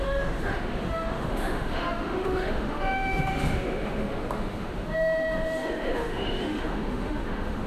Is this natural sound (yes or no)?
no